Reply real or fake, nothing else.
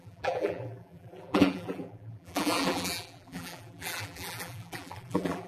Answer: fake